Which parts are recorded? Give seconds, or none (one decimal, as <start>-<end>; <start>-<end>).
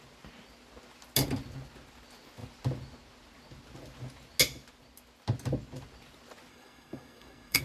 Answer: 0.0-6.5